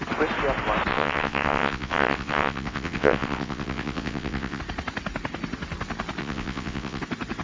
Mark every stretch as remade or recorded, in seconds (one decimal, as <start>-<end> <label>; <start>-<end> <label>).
0.0-0.9 recorded; 0.9-4.6 remade; 4.6-6.2 recorded; 6.2-7.0 remade; 7.0-7.4 recorded